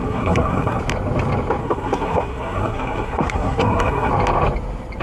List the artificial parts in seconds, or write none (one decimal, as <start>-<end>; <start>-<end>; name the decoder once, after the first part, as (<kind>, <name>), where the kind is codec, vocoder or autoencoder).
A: 0.0-0.8 (codec, SNAC); 1.6-4.1